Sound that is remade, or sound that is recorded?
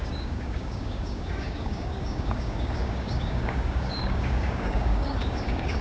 remade